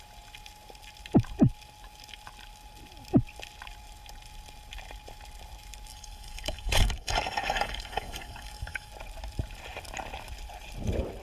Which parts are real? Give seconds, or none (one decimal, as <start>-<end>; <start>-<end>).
0.0-5.9; 8.9-11.2